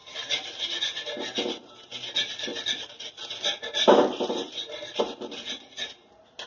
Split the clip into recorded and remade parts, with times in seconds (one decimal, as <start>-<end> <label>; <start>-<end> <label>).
0.0-0.8 remade; 0.8-2.5 recorded; 2.5-5.0 remade; 5.0-6.5 recorded